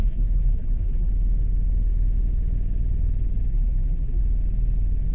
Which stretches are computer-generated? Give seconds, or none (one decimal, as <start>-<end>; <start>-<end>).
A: 0.0-1.1; 3.5-4.2